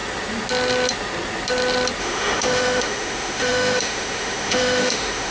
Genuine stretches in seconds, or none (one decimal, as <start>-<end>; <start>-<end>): 0.0-2.0